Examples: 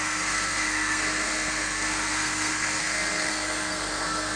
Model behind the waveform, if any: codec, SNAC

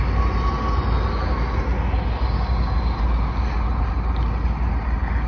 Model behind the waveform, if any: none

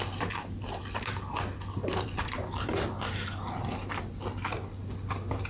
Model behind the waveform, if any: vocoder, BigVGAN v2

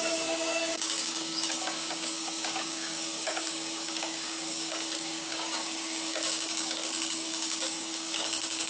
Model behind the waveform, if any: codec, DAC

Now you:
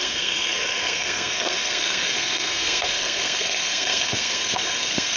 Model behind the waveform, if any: codec, SNAC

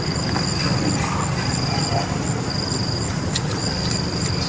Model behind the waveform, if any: none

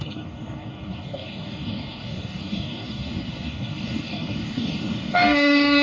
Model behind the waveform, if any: codec, DAC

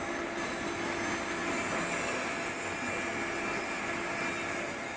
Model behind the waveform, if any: none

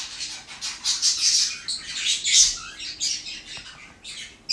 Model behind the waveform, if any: none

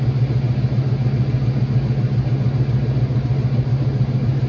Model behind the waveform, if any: none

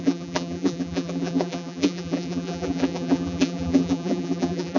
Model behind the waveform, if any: vocoder, BigVGAN v2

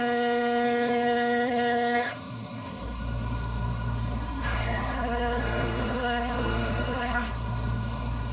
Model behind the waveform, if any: codec, SNAC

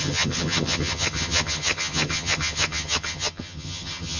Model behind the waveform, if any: vocoder, HiFi-GAN